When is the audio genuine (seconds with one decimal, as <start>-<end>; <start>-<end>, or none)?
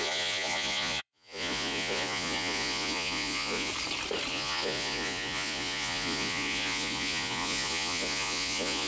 3.7-4.3